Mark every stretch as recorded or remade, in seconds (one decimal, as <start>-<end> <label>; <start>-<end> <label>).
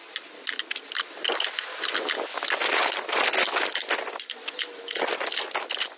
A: 0.0-6.0 recorded